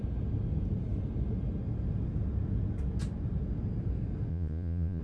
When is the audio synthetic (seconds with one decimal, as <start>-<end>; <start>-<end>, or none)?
4.3-5.0